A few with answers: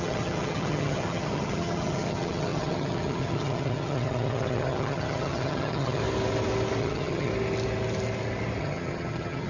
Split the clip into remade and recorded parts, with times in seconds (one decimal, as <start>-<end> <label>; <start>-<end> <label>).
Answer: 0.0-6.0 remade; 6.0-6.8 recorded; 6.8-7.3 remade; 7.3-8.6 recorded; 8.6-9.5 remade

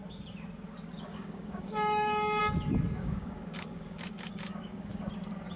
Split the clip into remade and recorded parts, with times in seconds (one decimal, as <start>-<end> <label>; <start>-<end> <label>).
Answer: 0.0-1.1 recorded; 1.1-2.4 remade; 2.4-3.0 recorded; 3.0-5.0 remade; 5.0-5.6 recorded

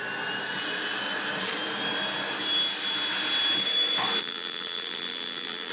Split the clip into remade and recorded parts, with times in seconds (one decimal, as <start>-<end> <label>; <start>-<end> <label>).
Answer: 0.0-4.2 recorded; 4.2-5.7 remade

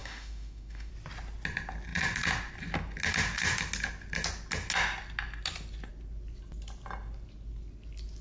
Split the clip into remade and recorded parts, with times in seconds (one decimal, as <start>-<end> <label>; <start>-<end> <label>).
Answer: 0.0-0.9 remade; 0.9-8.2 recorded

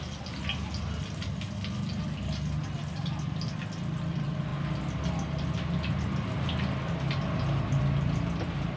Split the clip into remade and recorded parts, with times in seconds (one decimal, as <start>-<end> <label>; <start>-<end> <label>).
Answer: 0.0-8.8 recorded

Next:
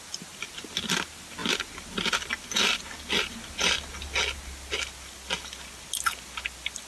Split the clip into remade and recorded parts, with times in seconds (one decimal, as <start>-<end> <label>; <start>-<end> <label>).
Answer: 0.0-6.9 recorded